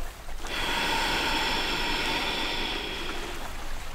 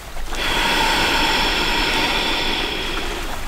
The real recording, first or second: first